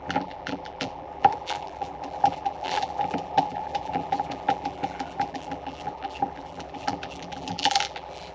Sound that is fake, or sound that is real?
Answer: fake